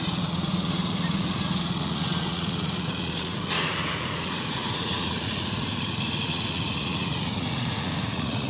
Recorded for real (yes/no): no